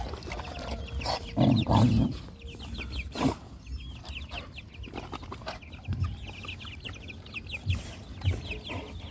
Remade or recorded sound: recorded